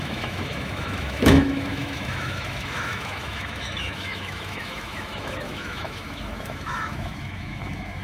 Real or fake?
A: fake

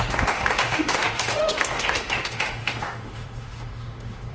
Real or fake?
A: fake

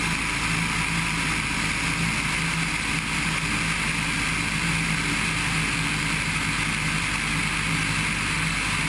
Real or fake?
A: real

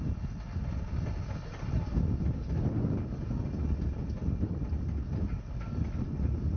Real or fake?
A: real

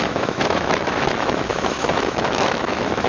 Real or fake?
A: fake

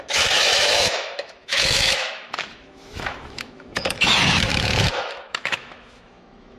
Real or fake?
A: fake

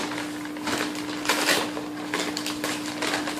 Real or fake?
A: real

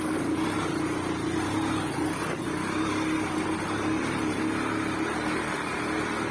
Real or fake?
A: real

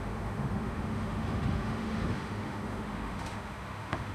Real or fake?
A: fake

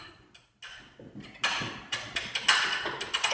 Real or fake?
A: real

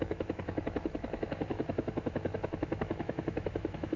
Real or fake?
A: fake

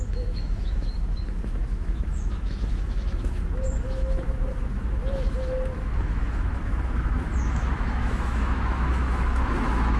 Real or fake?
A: fake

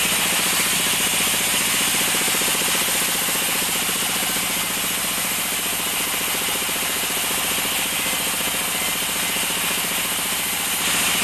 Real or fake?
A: real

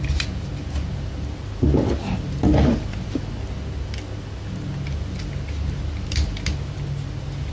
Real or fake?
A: real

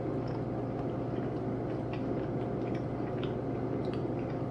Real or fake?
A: real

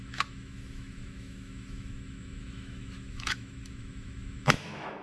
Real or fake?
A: fake